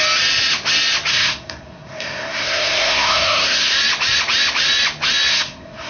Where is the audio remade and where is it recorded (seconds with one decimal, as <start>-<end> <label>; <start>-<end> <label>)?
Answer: 0.0-1.1 recorded; 1.1-3.7 remade; 3.7-5.3 recorded; 5.3-5.9 remade